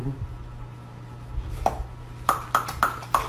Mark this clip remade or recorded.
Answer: recorded